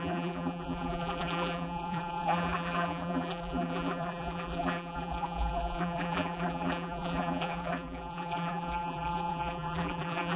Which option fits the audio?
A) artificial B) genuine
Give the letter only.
A